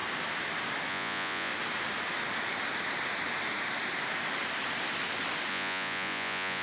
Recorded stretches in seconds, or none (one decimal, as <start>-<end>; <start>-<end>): 0.0-0.9; 1.5-5.5